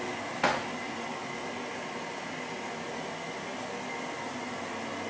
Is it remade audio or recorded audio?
recorded